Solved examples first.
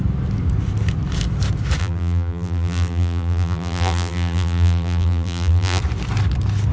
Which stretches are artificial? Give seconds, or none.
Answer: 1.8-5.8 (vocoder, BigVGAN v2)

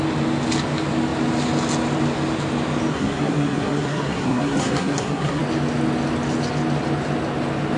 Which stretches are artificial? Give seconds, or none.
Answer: 2.9-5.4 (codec, SNAC)

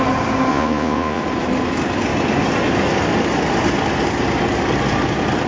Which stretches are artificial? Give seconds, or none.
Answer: 0.5-1.2 (vocoder, Vocos)

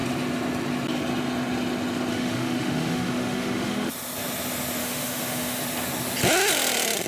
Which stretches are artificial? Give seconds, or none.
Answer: 2.1-3.9 (autoencoder, DAC-VAE); 4.8-5.6

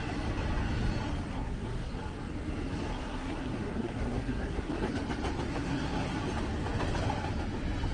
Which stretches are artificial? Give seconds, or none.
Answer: 1.3-2.0 (codec, SNAC); 2.9-4.9; 5.5-6.2